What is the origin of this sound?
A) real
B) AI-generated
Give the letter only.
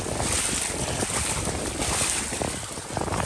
A